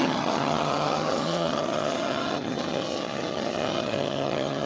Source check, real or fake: fake